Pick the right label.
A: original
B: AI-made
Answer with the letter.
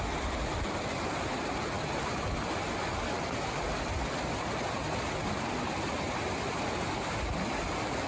A